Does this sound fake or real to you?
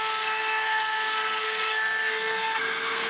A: fake